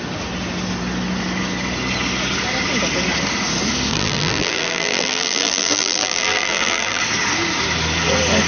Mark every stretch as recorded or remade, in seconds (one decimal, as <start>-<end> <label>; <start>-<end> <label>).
0.0-3.9 recorded; 3.9-7.0 remade; 7.0-8.5 recorded